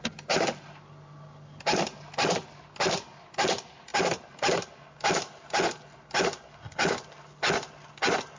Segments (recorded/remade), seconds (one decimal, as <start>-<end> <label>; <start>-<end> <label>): 0.0-8.4 recorded